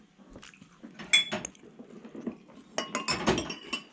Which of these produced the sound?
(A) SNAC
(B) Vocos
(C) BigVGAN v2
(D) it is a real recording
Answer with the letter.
D